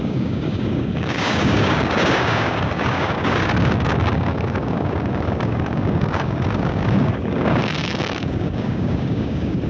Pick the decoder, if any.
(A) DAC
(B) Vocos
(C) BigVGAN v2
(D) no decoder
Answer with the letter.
A